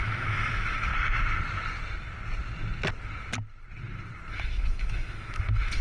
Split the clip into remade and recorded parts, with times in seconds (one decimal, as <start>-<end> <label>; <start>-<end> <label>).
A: 0.0-0.9 remade; 0.9-4.3 recorded; 4.3-5.8 remade